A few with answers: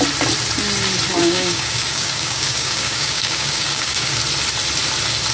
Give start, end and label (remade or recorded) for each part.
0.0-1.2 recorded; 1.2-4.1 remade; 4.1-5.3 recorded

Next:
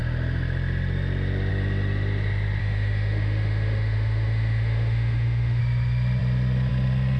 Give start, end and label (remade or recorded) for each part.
0.0-2.6 recorded; 2.6-5.6 remade; 5.6-7.2 recorded

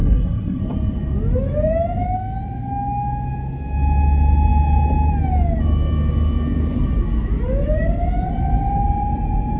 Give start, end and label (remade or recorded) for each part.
0.0-0.6 remade; 0.6-9.6 recorded